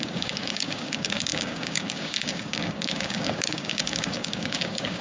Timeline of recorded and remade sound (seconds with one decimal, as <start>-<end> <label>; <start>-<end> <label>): 0.0-5.0 remade